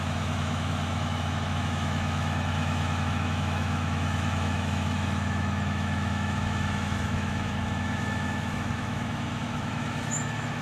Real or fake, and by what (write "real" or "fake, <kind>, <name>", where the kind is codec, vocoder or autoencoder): fake, autoencoder, DAC-VAE